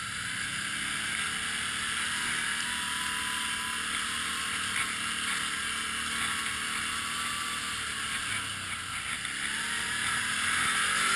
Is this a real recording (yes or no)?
yes